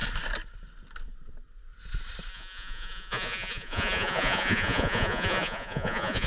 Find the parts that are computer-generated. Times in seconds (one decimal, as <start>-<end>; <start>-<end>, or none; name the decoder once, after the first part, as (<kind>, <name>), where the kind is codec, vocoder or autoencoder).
2.3-6.3 (vocoder, Vocos)